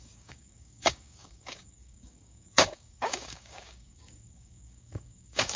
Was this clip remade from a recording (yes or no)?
yes